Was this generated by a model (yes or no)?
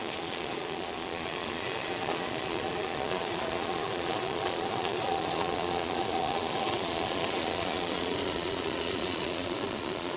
yes